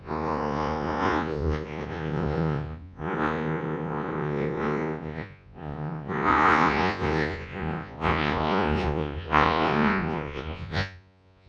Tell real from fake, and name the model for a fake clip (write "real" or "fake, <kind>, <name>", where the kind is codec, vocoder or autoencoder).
fake, vocoder, Vocos